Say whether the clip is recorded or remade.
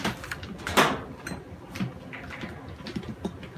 recorded